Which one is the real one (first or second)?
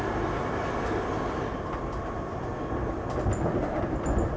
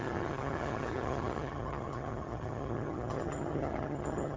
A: first